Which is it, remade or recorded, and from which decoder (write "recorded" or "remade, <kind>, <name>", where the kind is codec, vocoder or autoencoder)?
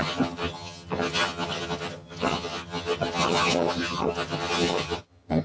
remade, vocoder, HiFi-GAN